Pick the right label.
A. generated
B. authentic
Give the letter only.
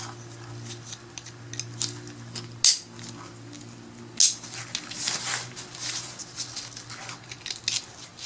B